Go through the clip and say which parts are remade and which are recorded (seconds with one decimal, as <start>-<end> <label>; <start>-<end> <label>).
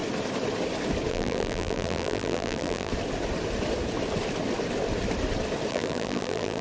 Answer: 0.0-1.1 recorded; 1.1-2.9 remade; 2.9-5.7 recorded; 5.7-6.6 remade